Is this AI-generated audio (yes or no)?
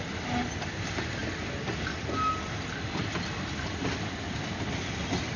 no